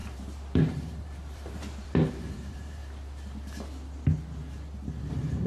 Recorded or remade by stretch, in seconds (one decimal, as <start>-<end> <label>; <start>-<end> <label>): 0.0-2.8 remade; 2.8-5.1 recorded; 5.1-5.5 remade